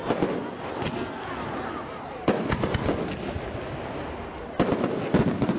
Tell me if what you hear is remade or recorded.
recorded